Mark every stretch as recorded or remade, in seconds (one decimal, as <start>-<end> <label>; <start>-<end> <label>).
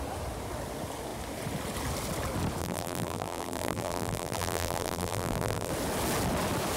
0.0-2.6 recorded; 2.6-5.7 remade; 5.7-6.8 recorded